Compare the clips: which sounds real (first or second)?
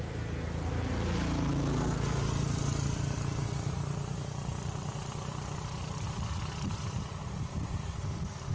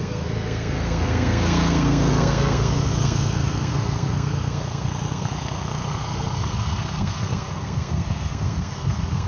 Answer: first